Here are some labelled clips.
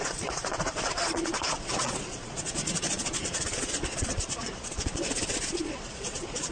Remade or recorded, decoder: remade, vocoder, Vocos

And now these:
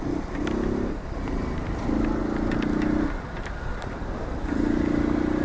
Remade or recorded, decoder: recorded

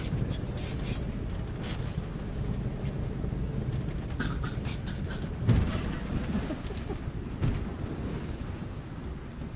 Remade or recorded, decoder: recorded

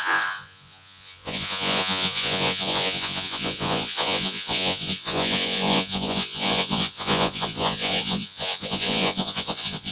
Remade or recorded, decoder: remade, vocoder, Vocos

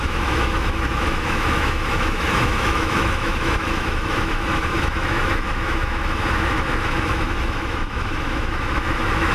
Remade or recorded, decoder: remade, autoencoder, DAC-VAE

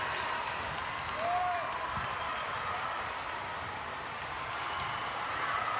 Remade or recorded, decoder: recorded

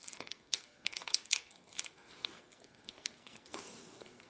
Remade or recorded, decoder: remade, codec, SNAC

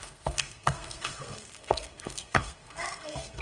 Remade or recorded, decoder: remade, codec, SNAC